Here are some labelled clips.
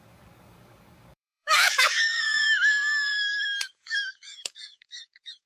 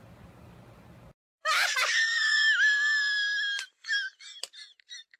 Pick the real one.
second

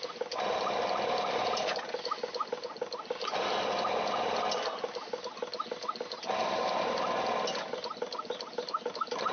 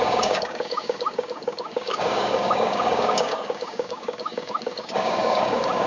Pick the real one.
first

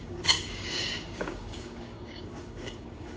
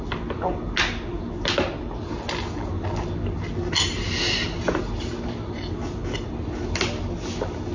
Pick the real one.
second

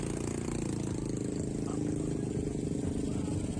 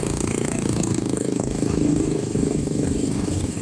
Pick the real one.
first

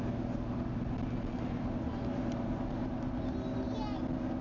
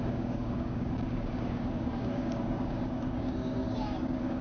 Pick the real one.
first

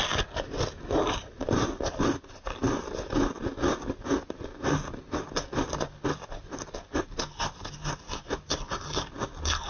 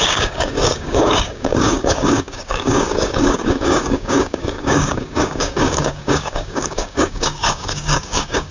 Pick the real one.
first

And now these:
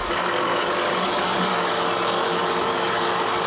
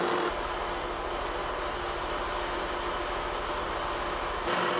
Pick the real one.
second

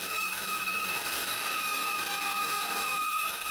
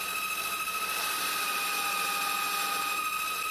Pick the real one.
second